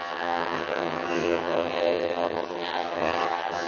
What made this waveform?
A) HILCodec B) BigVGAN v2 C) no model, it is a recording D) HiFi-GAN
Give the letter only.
D